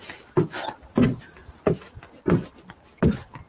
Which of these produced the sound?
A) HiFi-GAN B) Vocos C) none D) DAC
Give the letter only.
C